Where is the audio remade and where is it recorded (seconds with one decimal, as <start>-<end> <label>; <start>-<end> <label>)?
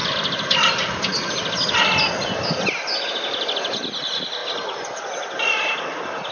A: 0.0-4.4 recorded; 4.4-5.0 remade; 5.0-6.3 recorded